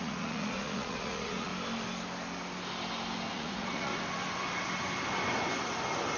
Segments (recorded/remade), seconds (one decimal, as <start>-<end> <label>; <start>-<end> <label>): 0.0-1.5 remade; 1.5-3.3 recorded; 3.3-3.9 remade; 3.9-6.2 recorded